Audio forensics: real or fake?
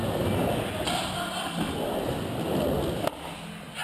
real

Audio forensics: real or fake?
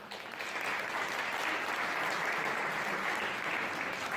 real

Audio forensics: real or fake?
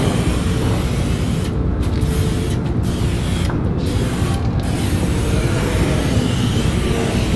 real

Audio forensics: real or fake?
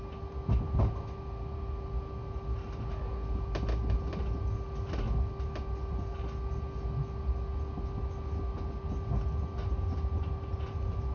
real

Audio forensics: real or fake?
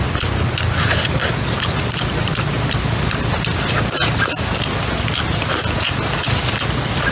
real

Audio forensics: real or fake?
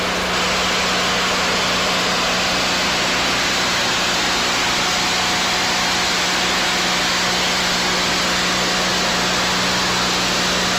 real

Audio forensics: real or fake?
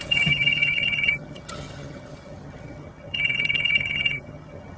fake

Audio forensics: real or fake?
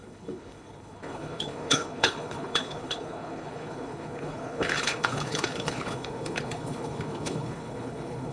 fake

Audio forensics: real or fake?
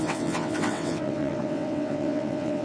fake